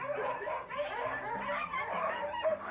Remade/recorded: remade